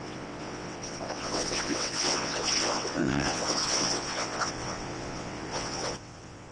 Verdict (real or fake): fake